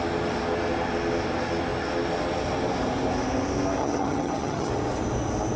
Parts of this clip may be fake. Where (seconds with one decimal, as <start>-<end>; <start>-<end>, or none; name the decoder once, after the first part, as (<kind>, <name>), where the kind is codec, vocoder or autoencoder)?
3.8-4.7 (vocoder, HiFi-GAN)